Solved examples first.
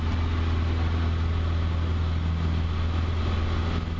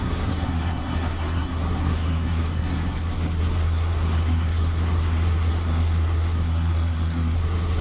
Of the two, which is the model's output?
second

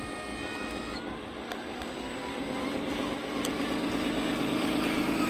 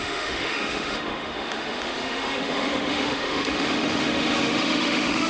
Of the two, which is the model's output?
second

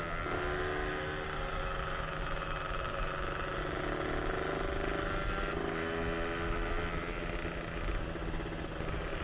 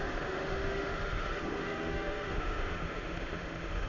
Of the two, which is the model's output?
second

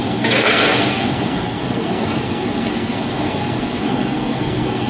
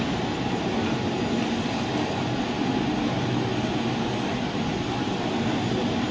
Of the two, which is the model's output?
first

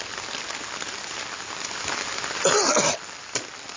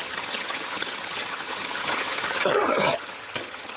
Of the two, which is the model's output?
second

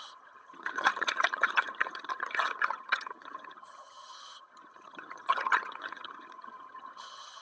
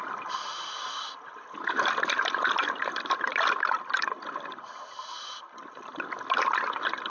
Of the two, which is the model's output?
first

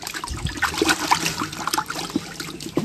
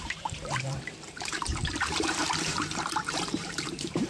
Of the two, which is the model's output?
second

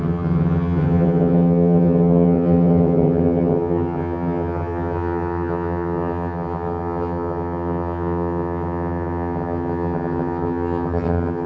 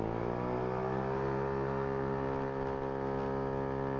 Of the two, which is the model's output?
first